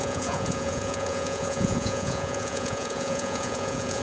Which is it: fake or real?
fake